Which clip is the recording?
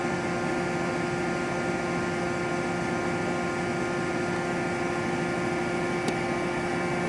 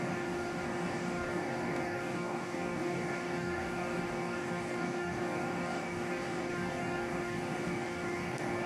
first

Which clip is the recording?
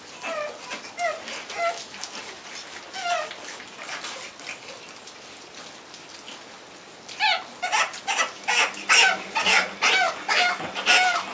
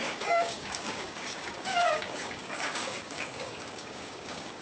first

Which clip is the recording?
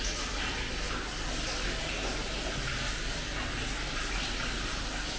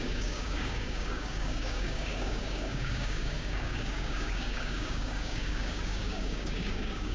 first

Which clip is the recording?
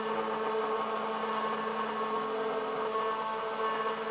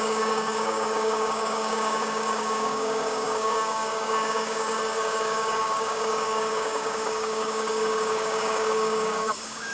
first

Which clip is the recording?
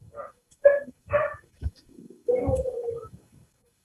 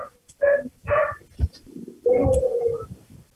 second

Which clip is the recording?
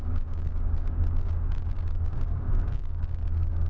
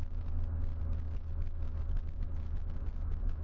second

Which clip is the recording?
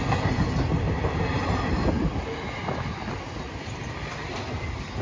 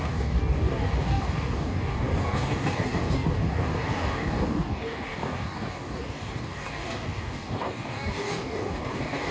first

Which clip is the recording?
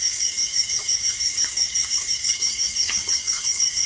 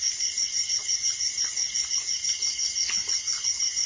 second